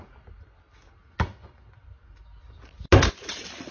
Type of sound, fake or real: real